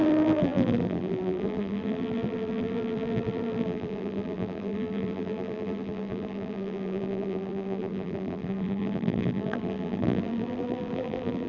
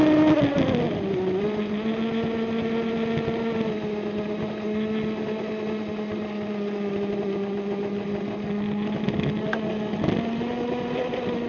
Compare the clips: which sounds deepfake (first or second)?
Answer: first